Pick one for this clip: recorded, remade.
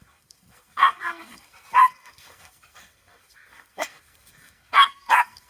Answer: remade